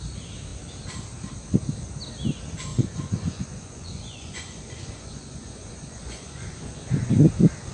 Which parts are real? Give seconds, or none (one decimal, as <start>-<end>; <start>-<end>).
0.0-2.7; 7.1-7.7